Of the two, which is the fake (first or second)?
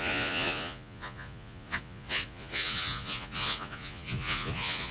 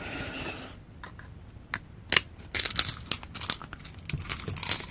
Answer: first